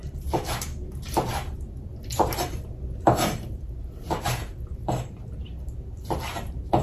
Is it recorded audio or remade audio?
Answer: remade